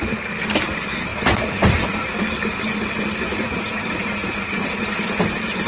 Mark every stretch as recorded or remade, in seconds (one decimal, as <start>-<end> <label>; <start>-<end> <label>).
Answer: 0.0-1.1 recorded; 1.1-2.1 remade; 2.1-3.3 recorded; 3.3-5.2 remade; 5.2-5.7 recorded